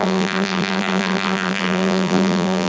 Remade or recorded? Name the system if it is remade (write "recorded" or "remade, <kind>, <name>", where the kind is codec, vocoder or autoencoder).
remade, vocoder, BigVGAN v2